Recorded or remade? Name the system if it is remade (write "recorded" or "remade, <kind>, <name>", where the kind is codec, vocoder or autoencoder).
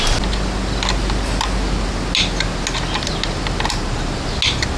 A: recorded